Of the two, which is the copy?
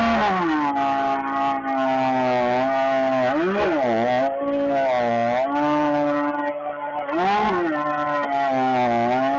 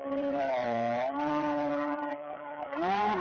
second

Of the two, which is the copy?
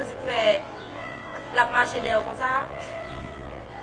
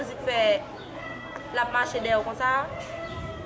first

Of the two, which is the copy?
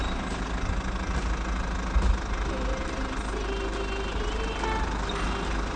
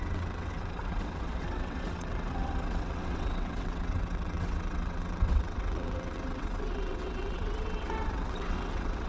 second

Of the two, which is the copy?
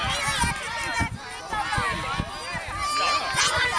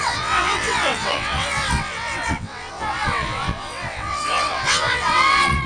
second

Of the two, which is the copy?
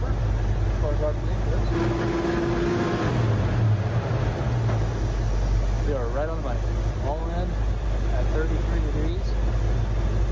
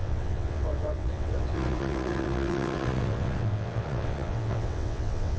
second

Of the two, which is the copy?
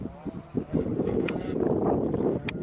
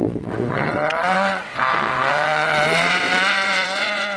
second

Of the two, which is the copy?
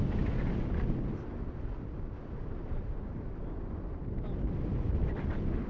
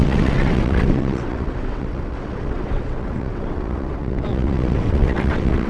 second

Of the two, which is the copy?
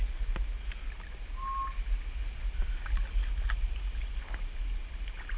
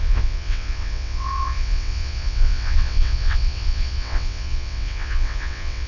second